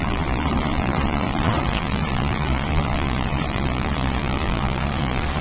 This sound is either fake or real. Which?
fake